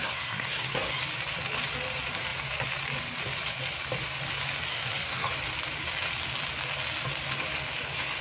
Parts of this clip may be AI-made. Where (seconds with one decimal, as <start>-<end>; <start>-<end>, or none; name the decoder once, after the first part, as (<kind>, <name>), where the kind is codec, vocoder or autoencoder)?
0.0-1.0 (codec, SNAC); 4.7-5.3

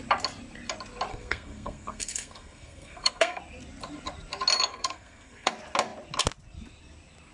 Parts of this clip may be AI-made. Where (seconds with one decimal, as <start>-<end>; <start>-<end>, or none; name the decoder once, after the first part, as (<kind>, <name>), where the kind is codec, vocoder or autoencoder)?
1.1-3.4 (codec, SNAC); 4.7-5.5

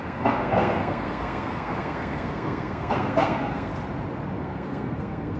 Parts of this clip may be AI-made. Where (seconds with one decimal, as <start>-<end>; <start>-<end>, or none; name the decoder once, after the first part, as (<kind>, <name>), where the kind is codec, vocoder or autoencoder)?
0.0-3.7 (codec, SNAC); 4.4-5.4

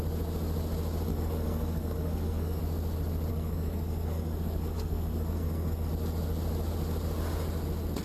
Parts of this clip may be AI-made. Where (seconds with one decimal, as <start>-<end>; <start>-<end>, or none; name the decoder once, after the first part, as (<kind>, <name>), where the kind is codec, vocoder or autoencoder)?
1.1-2.6 (codec, SNAC); 3.3-5.9

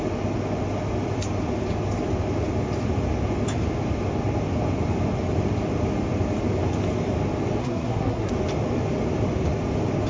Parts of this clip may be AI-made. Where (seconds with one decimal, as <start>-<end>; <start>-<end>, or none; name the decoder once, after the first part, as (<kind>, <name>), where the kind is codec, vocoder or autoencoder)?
7.6-8.3 (codec, SNAC)